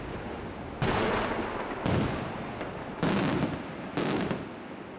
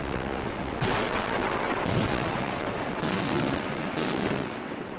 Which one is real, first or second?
first